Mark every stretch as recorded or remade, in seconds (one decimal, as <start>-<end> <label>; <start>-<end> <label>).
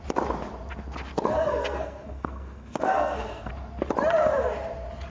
0.0-1.3 recorded; 1.3-3.5 remade; 3.5-5.1 recorded